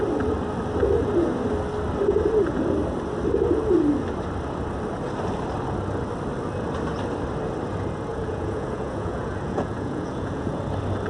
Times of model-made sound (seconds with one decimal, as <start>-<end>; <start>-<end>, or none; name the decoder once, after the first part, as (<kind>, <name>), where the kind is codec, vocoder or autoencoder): 8.1-10.6 (vocoder, Vocos)